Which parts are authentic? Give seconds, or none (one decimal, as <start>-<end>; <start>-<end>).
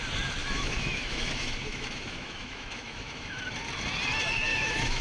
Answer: 0.0-0.4; 3.4-4.5